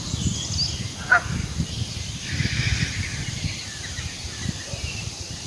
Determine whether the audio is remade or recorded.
recorded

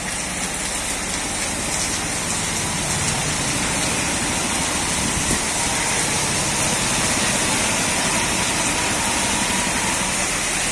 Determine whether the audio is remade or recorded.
recorded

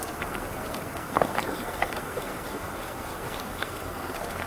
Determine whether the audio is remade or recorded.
remade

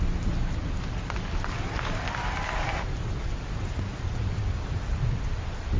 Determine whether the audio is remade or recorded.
recorded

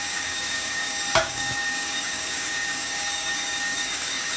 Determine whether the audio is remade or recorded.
remade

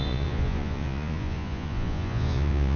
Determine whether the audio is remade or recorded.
remade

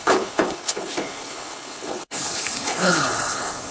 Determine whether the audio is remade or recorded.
remade